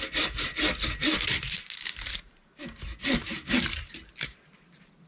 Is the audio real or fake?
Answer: real